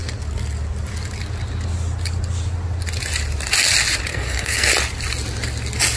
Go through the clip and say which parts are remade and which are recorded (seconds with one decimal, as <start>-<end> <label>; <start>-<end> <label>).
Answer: 0.0-4.1 recorded; 4.1-4.7 remade; 4.7-6.0 recorded